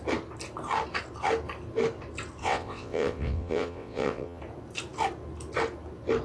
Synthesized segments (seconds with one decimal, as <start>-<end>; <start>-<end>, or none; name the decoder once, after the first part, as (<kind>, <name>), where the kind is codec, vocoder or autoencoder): 2.4-4.4 (vocoder, WaveNeXt)